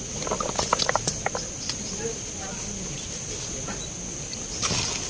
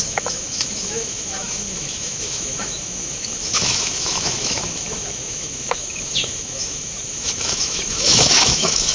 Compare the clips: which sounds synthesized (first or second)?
second